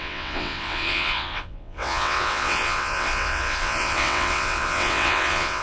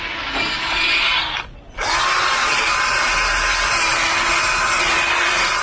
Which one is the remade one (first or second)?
first